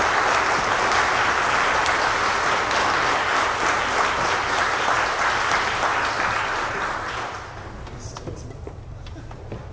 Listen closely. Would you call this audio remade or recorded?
recorded